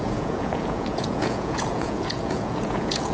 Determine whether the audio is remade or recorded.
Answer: remade